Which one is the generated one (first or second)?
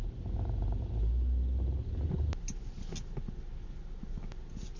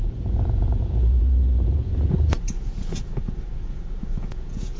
second